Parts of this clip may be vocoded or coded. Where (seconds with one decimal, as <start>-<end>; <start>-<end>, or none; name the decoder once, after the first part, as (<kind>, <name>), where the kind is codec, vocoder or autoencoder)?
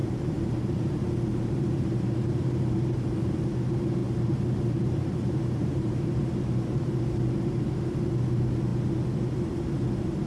0.0-3.5 (vocoder, BigVGAN v2); 4.0-6.1